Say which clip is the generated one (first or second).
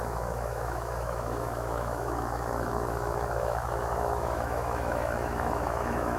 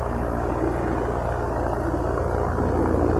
first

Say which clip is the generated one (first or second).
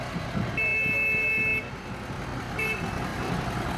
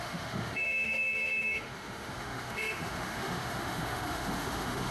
second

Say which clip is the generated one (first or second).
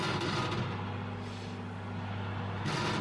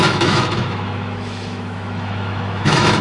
second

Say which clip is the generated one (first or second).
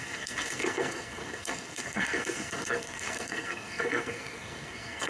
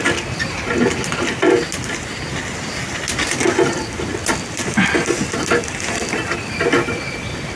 first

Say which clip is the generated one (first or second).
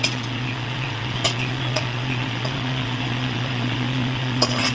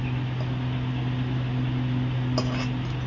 first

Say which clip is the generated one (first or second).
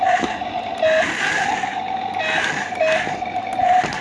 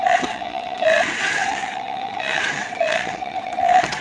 second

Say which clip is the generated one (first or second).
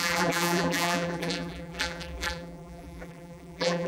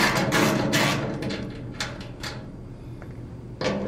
first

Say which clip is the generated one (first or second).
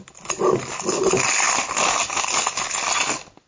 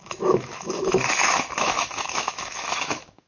second